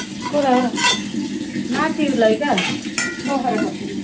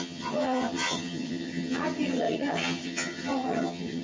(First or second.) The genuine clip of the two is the first